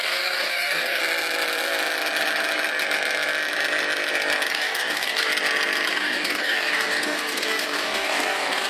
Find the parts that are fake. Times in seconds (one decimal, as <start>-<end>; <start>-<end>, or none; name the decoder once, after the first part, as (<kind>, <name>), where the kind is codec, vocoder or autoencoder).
0.0-1.0 (codec, DAC); 4.5-5.3; 5.9-8.7